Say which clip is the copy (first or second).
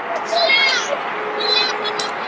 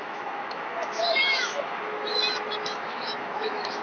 second